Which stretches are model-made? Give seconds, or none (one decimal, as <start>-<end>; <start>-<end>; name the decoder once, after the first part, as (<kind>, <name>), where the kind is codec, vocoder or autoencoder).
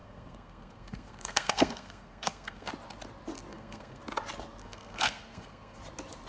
0.0-2.7 (codec, SNAC); 3.5-4.0; 4.6-5.8